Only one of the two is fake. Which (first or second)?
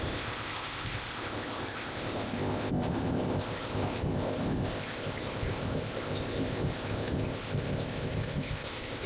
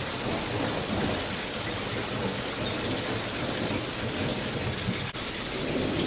first